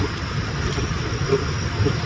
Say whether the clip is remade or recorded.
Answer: recorded